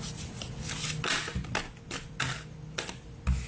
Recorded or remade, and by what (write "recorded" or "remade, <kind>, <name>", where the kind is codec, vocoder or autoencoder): recorded